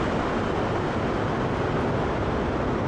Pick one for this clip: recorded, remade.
recorded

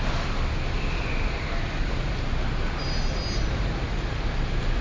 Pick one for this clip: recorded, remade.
recorded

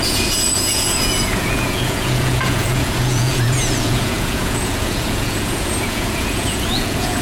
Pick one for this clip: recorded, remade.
remade